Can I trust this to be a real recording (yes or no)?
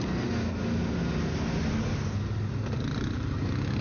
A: yes